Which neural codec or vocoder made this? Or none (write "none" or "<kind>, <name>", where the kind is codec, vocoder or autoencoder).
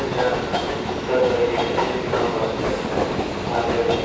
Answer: none